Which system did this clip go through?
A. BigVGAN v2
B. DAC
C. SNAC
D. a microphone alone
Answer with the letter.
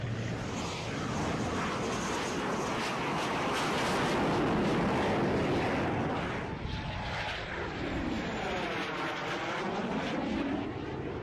D